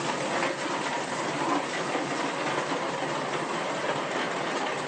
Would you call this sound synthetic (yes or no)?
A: no